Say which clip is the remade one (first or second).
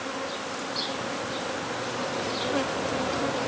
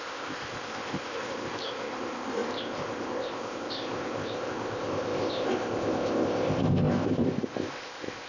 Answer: second